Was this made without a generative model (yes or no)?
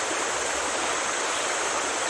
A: yes